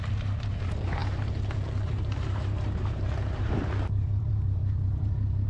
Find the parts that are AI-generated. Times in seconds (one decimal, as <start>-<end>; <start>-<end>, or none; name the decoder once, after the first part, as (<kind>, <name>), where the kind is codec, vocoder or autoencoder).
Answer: 0.0-5.5 (vocoder, BigVGAN v2)